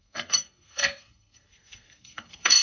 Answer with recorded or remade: remade